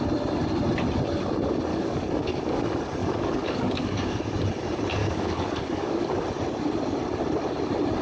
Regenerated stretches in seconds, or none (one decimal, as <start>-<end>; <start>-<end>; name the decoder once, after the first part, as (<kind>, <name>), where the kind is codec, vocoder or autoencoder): 1.7-2.6 (codec, DAC); 3.0-4.2; 5.0-6.1